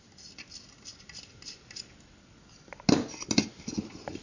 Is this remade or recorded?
recorded